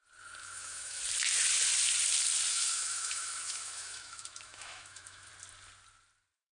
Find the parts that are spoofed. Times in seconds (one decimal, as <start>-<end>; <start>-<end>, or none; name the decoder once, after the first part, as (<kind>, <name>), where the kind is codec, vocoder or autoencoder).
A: 0.4-1.0 (autoencoder, DAC-VAE); 2.5-5.3